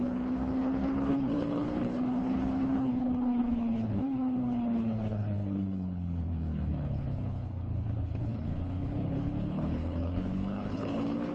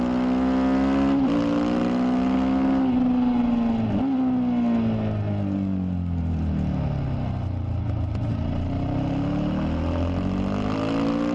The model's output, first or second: first